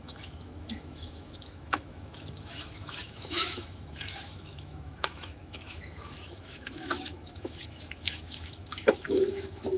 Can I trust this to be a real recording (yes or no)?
no